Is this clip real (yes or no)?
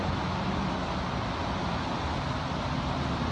yes